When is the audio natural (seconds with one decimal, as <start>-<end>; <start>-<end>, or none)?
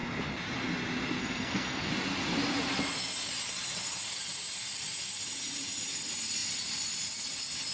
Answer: 0.0-1.2; 1.9-7.7